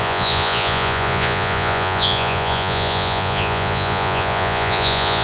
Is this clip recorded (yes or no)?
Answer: no